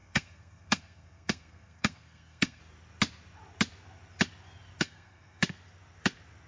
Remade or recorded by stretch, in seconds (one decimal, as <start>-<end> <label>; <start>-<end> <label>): 0.0-2.6 remade; 2.6-4.8 recorded; 4.8-5.4 remade; 5.4-6.5 recorded